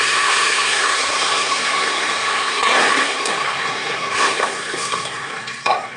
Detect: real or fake fake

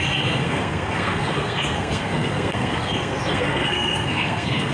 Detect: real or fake fake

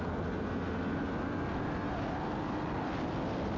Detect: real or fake real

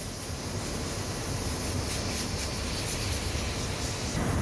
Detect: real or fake real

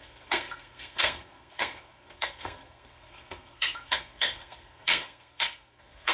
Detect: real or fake fake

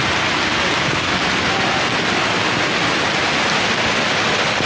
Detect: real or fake real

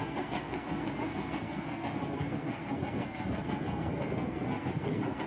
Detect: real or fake fake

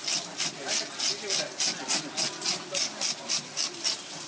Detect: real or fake real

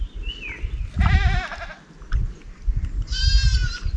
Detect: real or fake real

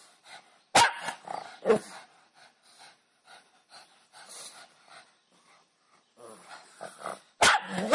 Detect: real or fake real